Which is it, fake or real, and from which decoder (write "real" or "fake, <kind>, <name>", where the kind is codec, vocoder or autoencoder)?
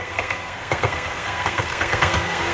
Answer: fake, codec, SNAC